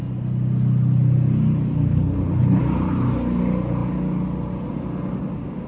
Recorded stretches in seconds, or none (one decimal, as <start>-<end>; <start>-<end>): 0.0-1.9; 2.6-5.7